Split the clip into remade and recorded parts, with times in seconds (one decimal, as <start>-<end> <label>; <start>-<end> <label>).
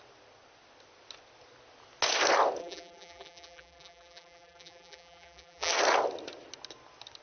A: 0.0-2.6 recorded; 2.6-5.7 remade; 5.7-7.2 recorded